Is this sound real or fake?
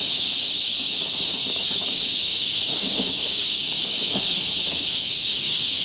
fake